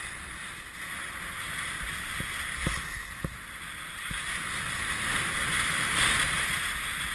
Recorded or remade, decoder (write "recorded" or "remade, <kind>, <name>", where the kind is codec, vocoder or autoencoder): recorded